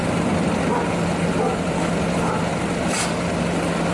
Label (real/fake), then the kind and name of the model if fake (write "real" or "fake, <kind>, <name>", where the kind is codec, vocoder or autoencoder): real